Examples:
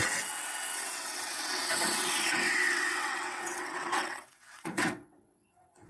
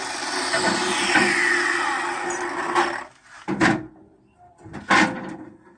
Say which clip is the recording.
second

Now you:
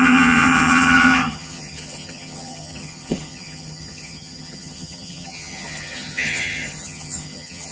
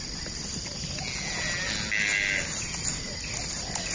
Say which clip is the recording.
second